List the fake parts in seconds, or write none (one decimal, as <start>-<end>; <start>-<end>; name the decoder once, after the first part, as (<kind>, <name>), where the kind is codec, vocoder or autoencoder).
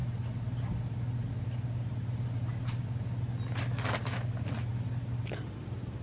4.7-5.4 (vocoder, BigVGAN v2)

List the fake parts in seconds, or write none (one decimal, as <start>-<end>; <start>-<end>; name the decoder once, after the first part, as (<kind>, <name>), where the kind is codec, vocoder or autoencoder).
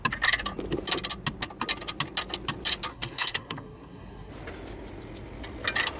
2.9-4.3 (codec, SNAC)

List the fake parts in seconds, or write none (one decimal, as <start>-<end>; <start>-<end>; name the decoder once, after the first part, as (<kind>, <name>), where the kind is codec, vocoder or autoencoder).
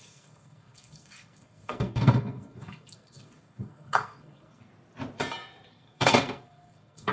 0.0-4.7 (codec, SNAC); 5.7-7.1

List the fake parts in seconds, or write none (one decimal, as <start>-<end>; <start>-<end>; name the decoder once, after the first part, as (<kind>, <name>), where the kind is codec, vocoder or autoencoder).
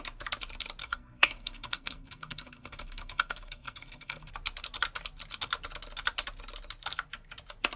0.8-4.3 (codec, SNAC)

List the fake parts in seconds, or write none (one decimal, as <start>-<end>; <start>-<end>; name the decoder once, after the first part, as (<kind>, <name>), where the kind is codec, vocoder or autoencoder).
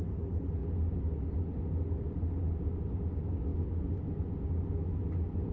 none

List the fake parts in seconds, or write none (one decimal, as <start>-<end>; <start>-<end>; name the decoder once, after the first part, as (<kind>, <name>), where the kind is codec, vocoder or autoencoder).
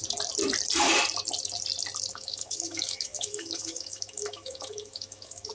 2.1-5.5 (autoencoder, DAC-VAE)